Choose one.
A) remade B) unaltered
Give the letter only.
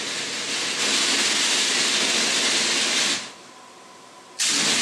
B